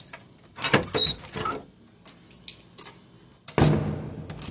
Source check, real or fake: real